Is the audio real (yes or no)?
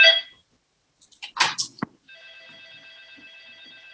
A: yes